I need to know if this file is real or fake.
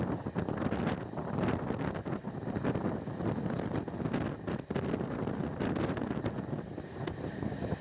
real